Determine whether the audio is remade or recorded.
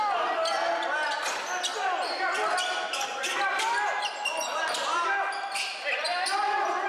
recorded